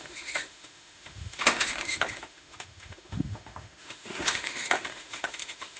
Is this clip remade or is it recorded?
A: remade